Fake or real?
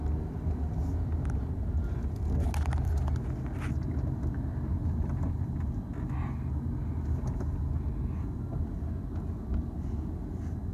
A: real